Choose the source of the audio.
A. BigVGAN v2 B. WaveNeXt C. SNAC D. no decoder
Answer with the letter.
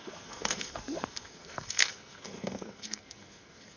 C